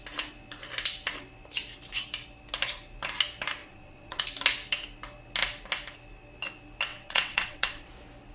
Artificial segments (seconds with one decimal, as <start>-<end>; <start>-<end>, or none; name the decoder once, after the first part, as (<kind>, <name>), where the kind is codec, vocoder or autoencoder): 3.6-4.2 (vocoder, WaveNeXt); 6.9-7.9